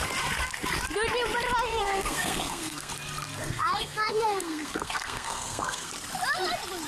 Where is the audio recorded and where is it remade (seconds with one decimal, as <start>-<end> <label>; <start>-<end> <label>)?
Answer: 0.0-1.7 recorded; 1.7-2.9 remade; 2.9-3.4 recorded; 3.4-5.9 remade; 5.9-6.9 recorded

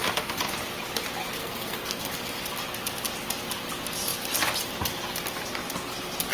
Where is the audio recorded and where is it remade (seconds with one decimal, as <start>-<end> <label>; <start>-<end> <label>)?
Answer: 0.0-1.4 recorded; 1.4-2.1 remade; 2.1-6.3 recorded

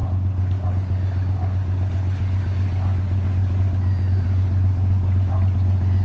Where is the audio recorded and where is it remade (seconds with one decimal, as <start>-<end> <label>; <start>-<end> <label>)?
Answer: 0.0-6.0 recorded

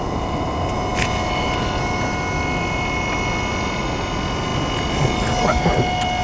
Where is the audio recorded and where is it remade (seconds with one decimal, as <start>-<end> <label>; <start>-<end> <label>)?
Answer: 0.0-6.2 recorded